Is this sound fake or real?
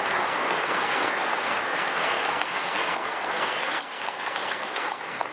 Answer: fake